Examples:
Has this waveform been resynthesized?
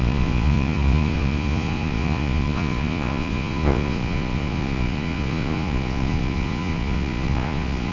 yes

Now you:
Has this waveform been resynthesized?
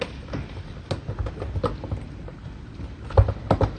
no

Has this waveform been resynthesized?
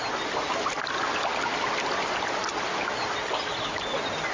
no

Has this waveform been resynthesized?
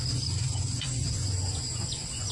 yes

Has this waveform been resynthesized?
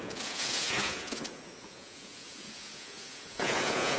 yes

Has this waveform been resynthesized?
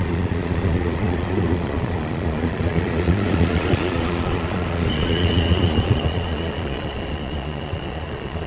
yes